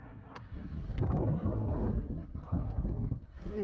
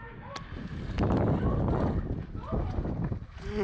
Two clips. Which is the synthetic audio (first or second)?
first